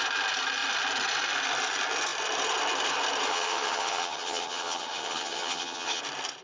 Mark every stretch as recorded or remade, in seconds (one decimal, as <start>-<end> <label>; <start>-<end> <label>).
0.0-3.3 recorded; 3.3-6.0 remade; 6.0-6.4 recorded